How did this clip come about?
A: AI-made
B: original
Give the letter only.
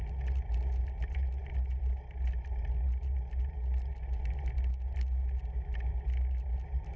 B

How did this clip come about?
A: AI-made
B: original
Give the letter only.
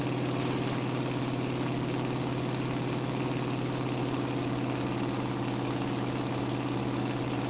B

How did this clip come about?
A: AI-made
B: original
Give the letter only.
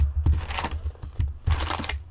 B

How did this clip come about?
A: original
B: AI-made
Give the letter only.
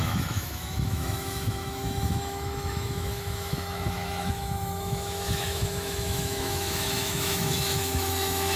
B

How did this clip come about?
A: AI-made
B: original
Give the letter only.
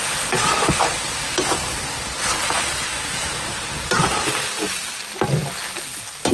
B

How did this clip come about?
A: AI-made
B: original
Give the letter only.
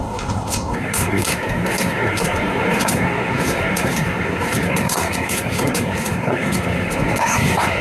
A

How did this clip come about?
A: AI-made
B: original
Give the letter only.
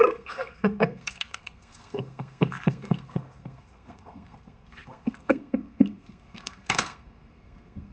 A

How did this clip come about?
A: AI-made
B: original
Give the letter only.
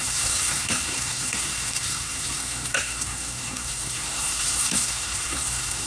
A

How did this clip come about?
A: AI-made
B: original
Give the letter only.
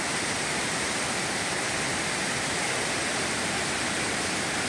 B